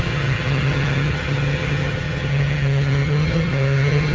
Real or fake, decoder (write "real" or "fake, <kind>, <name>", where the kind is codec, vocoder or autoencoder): fake, vocoder, HiFi-GAN